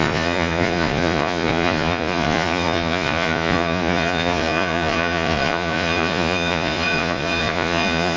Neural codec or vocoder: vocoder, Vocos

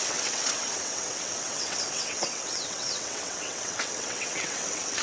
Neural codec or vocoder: vocoder, WaveNeXt